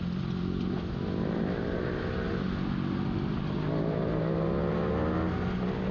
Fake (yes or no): no